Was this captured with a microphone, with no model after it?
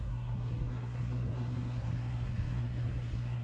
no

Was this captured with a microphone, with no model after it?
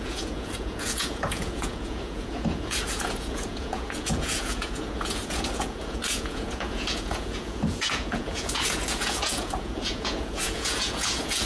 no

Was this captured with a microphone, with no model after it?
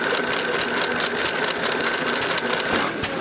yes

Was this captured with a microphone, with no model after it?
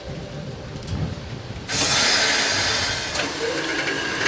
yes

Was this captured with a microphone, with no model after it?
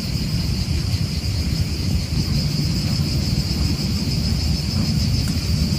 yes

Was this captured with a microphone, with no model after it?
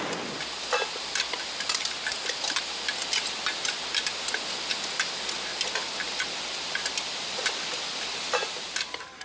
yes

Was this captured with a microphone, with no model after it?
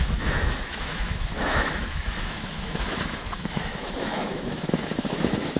no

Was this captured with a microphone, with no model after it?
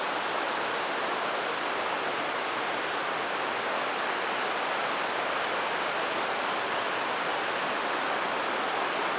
yes